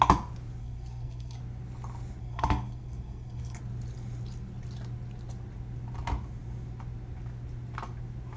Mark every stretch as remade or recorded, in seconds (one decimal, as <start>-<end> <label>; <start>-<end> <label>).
0.0-0.6 recorded; 0.6-1.4 remade; 1.4-2.2 recorded; 2.2-3.6 remade; 3.6-8.4 recorded